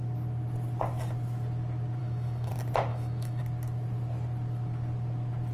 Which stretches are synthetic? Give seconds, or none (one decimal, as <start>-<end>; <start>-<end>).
2.0-2.5; 2.9-3.4